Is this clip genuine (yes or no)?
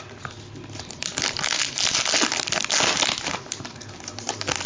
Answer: yes